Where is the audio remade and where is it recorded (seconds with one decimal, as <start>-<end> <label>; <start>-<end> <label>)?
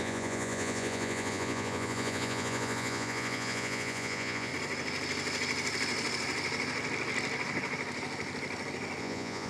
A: 0.0-4.5 remade; 4.5-9.0 recorded; 9.0-9.5 remade